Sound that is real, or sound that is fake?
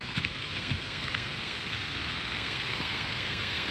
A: fake